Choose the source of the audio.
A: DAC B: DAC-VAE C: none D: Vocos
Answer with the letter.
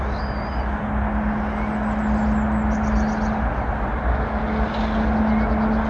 C